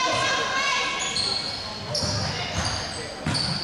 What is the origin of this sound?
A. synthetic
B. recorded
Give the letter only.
B